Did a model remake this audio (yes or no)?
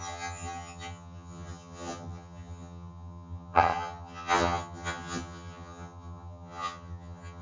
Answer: yes